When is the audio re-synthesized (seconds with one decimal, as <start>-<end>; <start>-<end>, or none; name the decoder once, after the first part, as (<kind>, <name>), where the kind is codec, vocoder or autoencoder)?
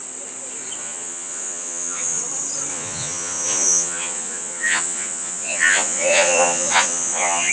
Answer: 0.8-2.2 (vocoder, Vocos); 2.7-7.5